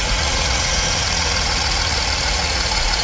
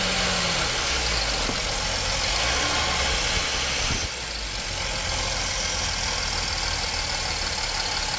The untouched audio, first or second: second